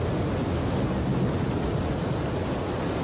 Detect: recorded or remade recorded